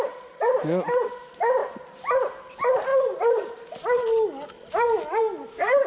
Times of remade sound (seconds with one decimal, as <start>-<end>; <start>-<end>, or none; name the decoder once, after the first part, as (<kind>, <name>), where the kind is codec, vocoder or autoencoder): none